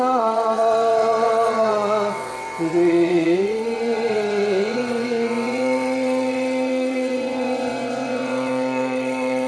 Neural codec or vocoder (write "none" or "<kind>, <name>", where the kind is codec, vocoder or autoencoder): vocoder, WaveNeXt